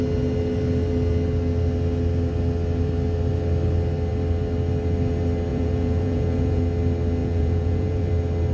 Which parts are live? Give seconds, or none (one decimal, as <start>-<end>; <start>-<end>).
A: 0.0-5.5; 6.6-7.2; 8.1-8.5